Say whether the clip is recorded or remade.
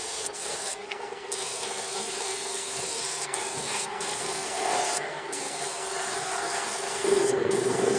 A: remade